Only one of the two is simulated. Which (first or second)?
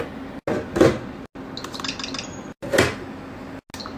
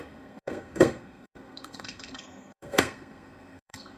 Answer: second